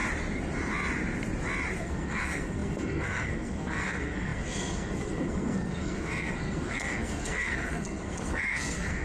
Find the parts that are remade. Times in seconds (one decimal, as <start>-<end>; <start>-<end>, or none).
1.8-9.0